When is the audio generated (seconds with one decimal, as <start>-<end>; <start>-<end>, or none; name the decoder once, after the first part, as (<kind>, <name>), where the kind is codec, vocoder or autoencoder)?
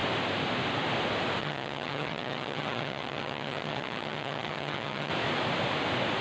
1.4-5.1 (vocoder, HiFi-GAN)